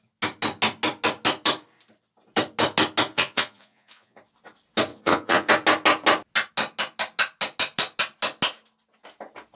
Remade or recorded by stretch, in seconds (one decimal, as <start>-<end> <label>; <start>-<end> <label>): 0.0-3.1 recorded; 3.1-4.2 remade; 4.2-4.9 recorded; 4.9-5.5 remade; 5.5-9.5 recorded